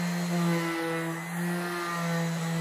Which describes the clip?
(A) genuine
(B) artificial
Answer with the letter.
A